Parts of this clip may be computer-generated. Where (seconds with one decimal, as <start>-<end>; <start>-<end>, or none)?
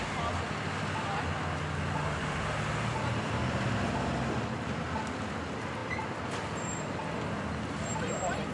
none